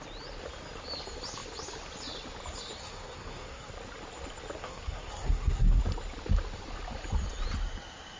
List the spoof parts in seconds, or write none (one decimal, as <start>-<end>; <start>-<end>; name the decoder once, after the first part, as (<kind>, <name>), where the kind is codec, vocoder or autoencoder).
2.8-3.7 (codec, SNAC); 4.6-5.8